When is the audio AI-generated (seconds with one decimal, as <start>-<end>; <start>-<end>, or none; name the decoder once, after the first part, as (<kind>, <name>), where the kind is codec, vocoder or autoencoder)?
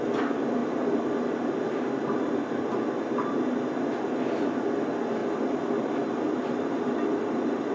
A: 0.6-2.3 (vocoder, BigVGAN v2)